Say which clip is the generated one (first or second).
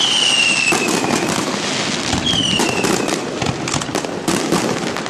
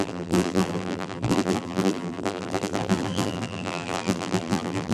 second